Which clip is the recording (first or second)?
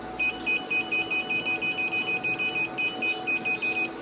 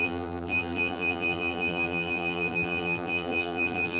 first